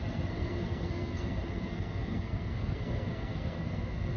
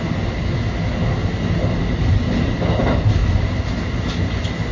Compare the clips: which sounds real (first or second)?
second